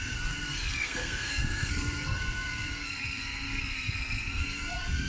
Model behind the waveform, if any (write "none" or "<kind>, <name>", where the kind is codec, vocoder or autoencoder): codec, SNAC